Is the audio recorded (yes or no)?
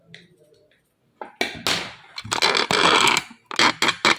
yes